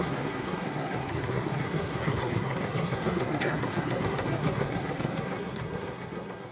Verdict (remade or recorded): remade